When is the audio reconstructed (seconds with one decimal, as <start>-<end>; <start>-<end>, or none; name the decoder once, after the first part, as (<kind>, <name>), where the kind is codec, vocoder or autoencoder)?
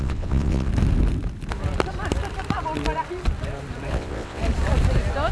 0.0-0.7 (vocoder, WaveNeXt); 3.9-4.4